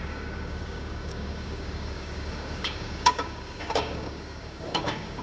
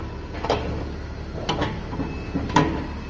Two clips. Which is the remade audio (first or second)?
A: first